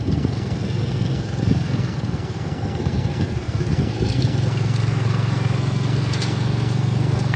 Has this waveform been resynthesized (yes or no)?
yes